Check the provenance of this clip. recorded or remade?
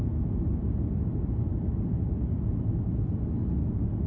recorded